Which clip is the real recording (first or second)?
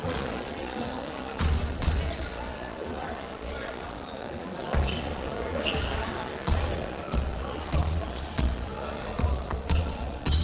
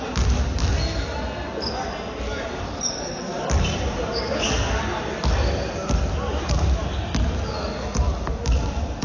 second